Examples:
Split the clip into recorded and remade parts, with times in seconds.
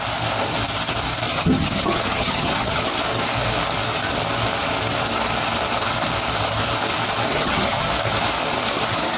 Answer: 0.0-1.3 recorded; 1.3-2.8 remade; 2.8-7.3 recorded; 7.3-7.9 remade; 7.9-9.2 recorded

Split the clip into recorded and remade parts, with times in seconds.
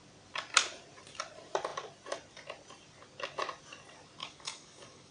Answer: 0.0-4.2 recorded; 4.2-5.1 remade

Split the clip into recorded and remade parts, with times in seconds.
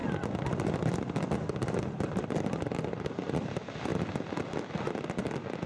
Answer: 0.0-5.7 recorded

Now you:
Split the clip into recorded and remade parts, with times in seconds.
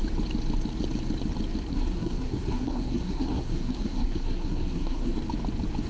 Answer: 0.0-1.7 recorded; 1.7-5.2 remade; 5.2-5.9 recorded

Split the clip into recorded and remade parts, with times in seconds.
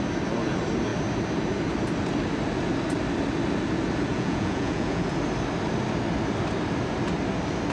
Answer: 0.0-4.1 recorded; 4.1-5.1 remade; 5.1-7.7 recorded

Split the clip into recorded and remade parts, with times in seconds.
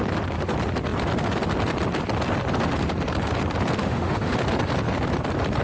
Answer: 0.0-3.8 recorded; 3.8-4.3 remade; 4.3-5.6 recorded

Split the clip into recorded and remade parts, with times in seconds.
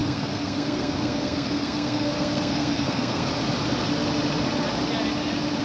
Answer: 0.0-3.3 remade; 3.3-5.6 recorded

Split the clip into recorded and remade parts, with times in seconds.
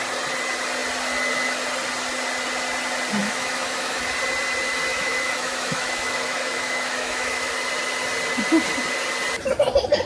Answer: 0.0-3.2 recorded; 3.2-4.0 remade; 4.0-4.9 recorded; 4.9-7.5 remade; 7.5-10.1 recorded